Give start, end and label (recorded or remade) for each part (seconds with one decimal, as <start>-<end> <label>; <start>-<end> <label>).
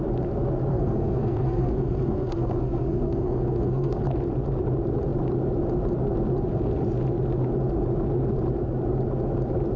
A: 0.0-0.7 recorded; 0.7-4.0 remade; 4.0-9.8 recorded